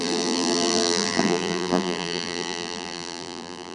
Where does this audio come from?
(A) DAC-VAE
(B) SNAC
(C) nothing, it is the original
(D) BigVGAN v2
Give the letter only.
D